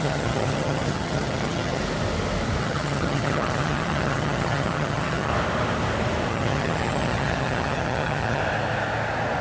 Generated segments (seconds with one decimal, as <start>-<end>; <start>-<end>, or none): 0.0-1.8; 2.6-5.3; 6.3-8.4